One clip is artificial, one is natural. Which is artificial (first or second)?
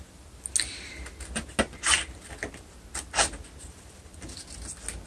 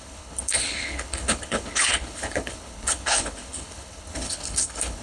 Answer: second